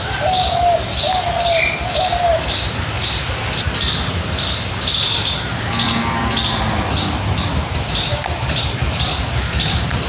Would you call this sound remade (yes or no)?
no